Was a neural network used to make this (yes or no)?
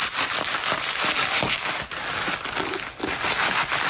no